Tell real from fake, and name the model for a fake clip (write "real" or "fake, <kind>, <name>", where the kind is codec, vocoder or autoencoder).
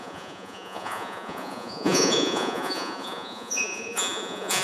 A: fake, vocoder, Vocos